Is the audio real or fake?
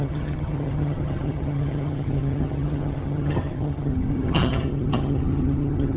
fake